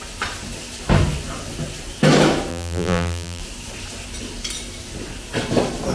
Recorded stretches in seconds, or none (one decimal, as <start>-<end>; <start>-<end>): 0.0-2.5; 3.4-5.9